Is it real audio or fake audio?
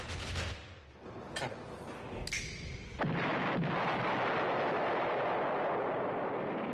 real